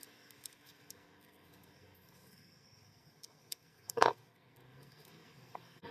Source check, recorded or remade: remade